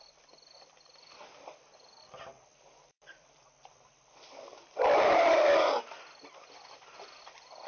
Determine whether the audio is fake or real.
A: fake